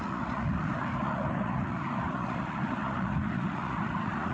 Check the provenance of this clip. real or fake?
fake